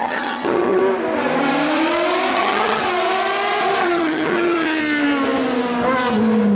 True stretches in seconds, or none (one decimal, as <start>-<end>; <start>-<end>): 0.8-2.3; 2.8-3.8; 4.8-6.5

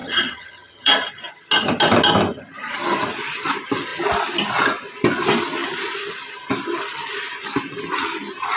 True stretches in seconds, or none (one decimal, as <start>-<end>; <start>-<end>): 0.9-8.6